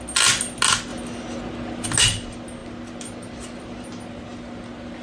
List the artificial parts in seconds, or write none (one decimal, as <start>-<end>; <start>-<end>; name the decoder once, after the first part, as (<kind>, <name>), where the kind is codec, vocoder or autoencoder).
none